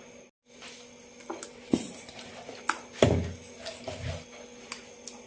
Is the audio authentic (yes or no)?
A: yes